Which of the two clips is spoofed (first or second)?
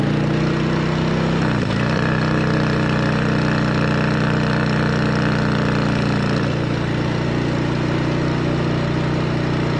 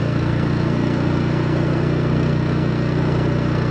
second